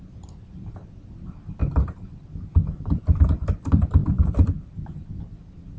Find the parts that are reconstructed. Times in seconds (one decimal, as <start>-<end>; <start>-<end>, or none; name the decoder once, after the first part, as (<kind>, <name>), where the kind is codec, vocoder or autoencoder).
0.0-5.8 (vocoder, BigVGAN v2)